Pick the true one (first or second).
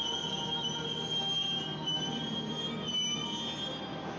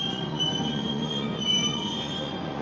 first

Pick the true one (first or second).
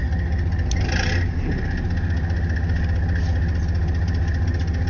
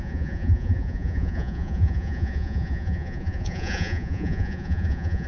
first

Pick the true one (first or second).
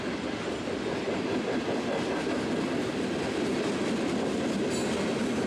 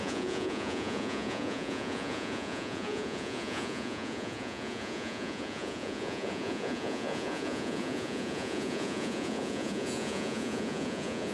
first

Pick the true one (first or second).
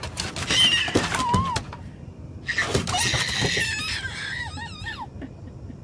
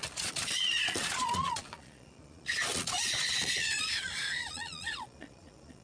first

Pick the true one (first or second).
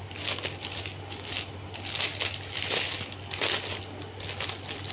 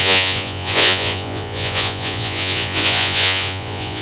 first